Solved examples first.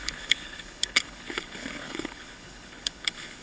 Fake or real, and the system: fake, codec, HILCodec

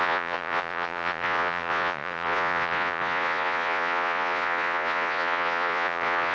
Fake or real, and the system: fake, vocoder, Vocos